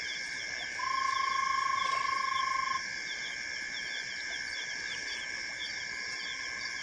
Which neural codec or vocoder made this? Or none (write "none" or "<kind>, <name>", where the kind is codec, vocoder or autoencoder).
none